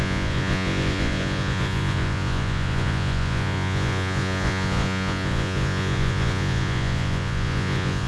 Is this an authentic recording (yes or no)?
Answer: no